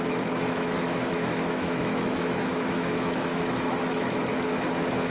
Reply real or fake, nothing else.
fake